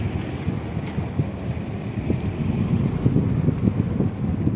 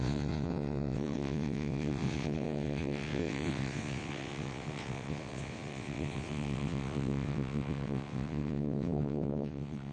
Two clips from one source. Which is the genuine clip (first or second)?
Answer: first